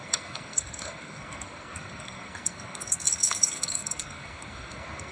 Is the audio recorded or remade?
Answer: remade